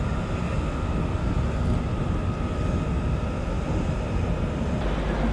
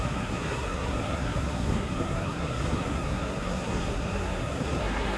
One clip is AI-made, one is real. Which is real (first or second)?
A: first